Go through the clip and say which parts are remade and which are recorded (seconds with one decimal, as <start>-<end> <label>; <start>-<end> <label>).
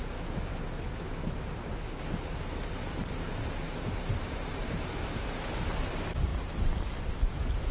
0.0-7.7 recorded